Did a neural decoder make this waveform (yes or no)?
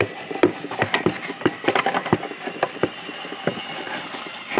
no